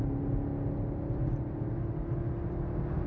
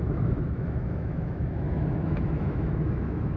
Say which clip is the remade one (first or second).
second